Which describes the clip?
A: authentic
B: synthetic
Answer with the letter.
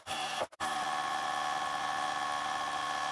A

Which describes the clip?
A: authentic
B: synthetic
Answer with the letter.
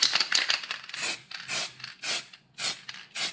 A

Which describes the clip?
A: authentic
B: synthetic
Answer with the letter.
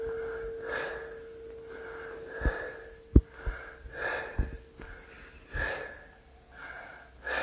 A